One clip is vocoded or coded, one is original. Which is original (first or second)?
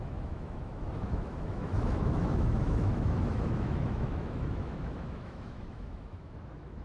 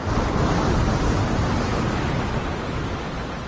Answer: second